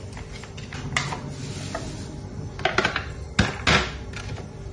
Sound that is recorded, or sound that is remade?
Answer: recorded